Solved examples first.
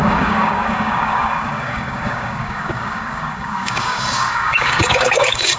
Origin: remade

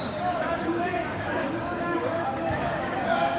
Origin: remade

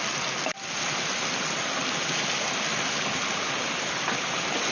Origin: recorded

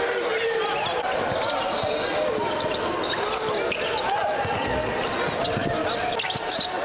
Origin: recorded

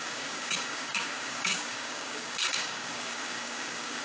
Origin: remade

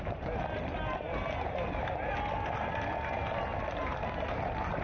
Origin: recorded